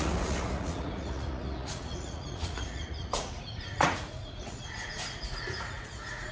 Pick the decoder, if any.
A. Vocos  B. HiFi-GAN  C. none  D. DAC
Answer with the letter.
A